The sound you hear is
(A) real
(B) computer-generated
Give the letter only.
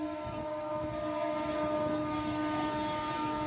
B